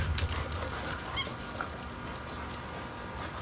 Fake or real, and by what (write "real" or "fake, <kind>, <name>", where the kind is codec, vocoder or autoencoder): real